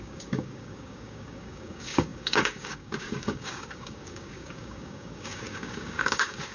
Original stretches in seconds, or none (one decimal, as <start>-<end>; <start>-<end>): none